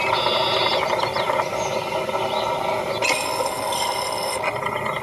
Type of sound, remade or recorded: recorded